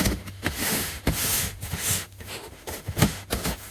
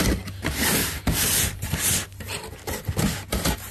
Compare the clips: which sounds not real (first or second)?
first